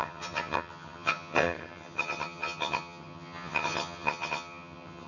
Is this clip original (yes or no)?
no